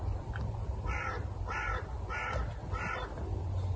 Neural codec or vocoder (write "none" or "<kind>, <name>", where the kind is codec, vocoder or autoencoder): none